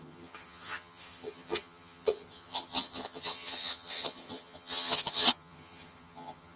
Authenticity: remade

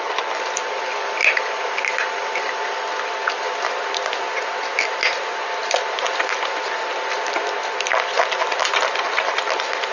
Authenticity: recorded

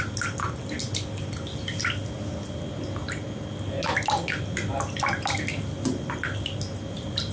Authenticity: recorded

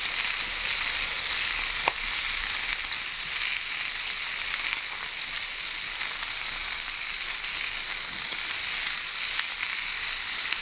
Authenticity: recorded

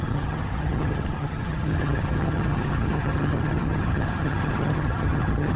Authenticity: remade